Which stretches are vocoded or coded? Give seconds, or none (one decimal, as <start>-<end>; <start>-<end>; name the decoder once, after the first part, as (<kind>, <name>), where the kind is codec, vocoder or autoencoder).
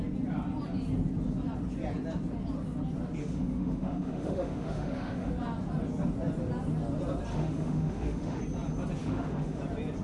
3.2-5.3 (autoencoder, DAC-VAE); 7.3-8.4; 9.0-9.6